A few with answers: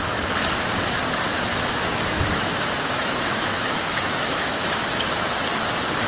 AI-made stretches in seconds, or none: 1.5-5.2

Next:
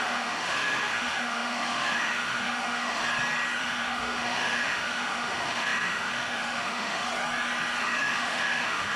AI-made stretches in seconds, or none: 0.0-3.0; 3.6-7.1; 7.8-9.0

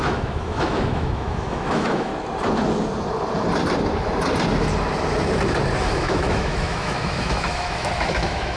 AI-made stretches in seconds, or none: 0.0-2.1; 5.8-8.6

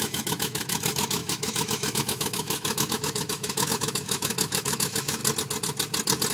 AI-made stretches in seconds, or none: 0.0-5.2

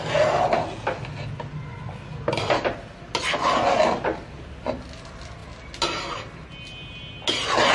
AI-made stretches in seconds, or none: none

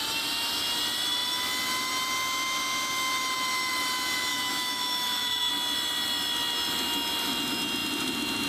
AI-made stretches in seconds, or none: 4.3-5.5

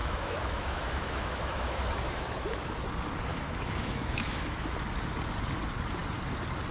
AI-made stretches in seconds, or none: 0.0-2.6; 3.3-4.7